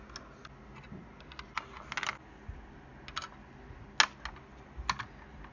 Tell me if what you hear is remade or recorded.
recorded